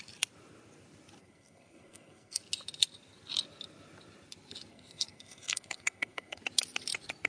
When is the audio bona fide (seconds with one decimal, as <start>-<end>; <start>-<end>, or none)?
0.0-1.2; 2.4-4.7; 6.4-7.3